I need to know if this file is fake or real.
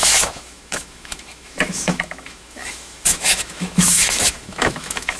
fake